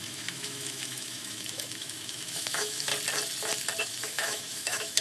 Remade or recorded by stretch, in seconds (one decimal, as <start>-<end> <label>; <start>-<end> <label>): 0.0-2.9 remade; 2.9-3.8 recorded; 3.8-5.0 remade